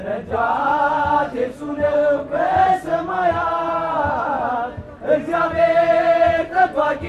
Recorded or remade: recorded